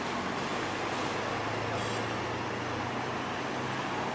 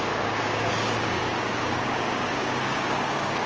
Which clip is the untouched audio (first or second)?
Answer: first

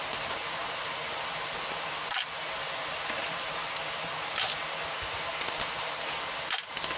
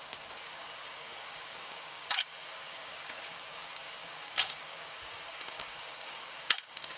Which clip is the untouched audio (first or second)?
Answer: first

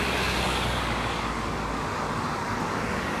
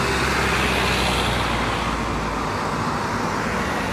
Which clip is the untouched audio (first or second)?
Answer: second